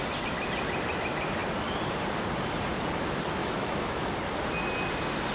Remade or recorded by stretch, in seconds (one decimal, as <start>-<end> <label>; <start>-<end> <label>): 0.0-3.4 recorded; 3.4-4.1 remade; 4.1-5.3 recorded